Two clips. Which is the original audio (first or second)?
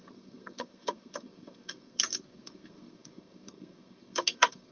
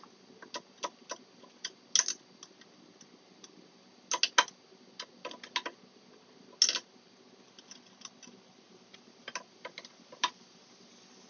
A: second